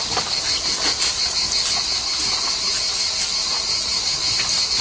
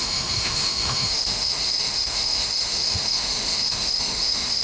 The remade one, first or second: second